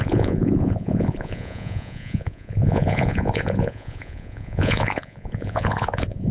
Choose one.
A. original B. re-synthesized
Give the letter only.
B